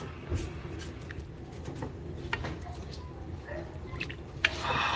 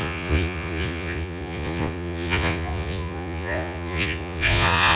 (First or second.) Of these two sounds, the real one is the first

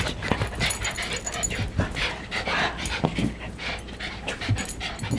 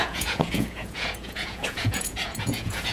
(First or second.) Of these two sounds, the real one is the first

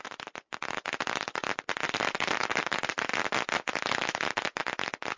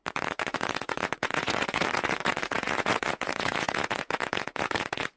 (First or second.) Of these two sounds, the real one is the first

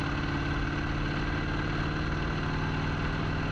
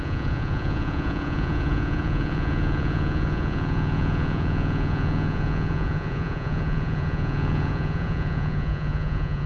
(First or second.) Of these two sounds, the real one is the first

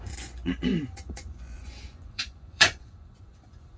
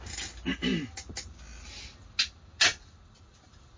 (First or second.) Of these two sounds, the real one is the second